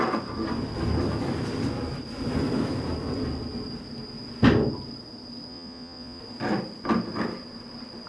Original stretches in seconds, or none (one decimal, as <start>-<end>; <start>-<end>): 0.0-5.5; 6.2-8.1